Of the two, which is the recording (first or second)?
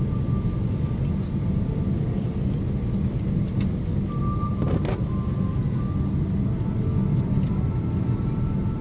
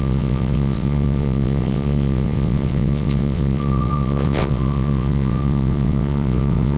first